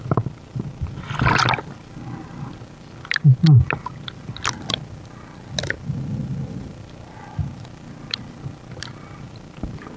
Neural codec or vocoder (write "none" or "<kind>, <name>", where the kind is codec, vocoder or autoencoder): none